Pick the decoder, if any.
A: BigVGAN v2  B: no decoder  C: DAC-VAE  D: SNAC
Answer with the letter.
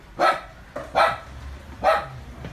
B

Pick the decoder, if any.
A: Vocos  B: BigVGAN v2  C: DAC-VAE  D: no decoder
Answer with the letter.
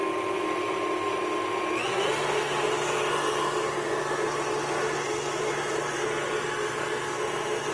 D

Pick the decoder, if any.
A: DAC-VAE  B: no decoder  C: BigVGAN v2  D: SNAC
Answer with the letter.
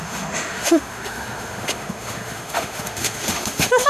A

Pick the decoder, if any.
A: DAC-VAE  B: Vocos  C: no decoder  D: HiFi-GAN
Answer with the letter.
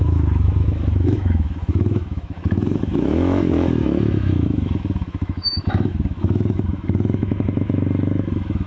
A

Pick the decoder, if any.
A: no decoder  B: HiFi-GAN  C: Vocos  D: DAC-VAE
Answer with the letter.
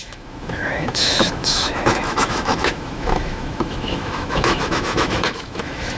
D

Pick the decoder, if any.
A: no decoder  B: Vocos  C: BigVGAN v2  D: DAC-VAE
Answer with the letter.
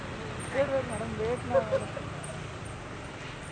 A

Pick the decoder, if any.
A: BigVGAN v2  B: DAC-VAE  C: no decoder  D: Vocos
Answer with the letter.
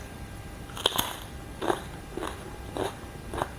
C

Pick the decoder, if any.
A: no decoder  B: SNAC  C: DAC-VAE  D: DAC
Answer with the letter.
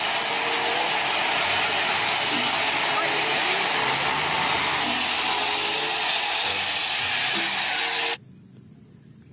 A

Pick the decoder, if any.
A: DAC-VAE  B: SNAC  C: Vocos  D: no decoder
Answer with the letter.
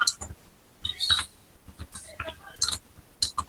D